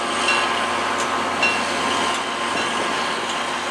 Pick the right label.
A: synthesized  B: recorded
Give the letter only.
B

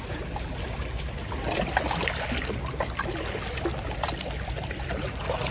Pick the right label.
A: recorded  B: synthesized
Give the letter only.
A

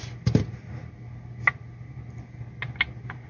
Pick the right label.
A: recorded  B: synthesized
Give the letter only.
A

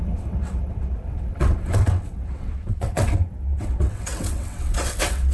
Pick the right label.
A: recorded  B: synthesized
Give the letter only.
B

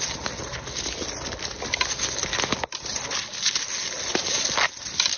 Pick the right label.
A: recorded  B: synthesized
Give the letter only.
A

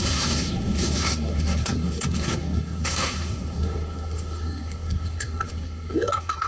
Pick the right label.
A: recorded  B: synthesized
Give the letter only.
B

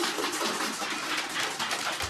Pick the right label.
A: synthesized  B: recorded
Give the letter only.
B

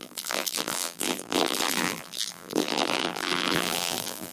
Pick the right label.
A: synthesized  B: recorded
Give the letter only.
A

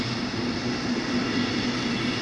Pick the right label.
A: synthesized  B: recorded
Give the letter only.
B